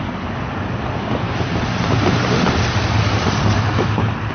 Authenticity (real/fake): fake